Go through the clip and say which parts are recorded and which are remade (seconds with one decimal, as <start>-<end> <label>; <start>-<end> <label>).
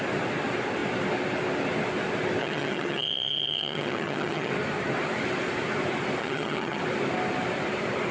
0.0-2.4 recorded; 2.4-4.5 remade; 4.5-6.2 recorded; 6.2-6.8 remade; 6.8-8.1 recorded